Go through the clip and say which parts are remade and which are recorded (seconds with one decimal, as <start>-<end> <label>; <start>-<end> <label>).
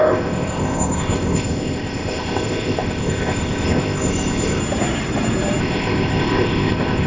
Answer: 0.0-4.6 remade; 4.6-5.6 recorded; 5.6-7.1 remade